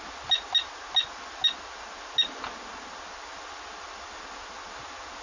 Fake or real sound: real